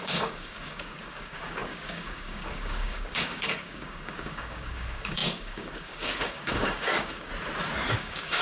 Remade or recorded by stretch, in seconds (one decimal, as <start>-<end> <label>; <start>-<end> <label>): 0.0-7.3 remade; 7.3-7.9 recorded; 7.9-8.4 remade